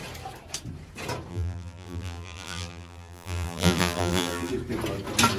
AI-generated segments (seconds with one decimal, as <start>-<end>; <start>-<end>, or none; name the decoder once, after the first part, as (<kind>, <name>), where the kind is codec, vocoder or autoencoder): 1.3-4.5 (vocoder, BigVGAN v2)